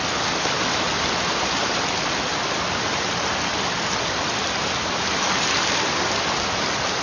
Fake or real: real